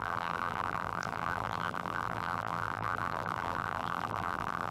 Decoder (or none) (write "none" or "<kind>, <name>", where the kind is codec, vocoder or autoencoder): vocoder, BigVGAN v2